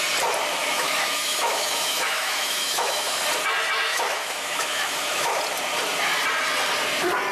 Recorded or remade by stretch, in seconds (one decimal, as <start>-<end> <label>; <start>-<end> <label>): 0.0-0.6 recorded; 0.6-3.2 remade; 3.2-3.9 recorded; 3.9-5.4 remade; 5.4-7.3 recorded